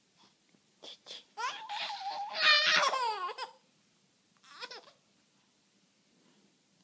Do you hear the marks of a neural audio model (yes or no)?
no